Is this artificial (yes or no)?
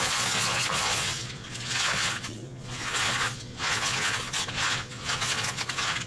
yes